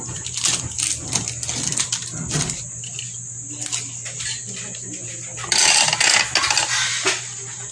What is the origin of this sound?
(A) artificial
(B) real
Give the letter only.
B